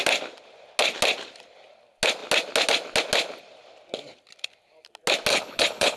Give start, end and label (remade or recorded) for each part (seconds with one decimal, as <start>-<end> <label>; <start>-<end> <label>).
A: 0.0-5.3 recorded; 5.3-6.0 remade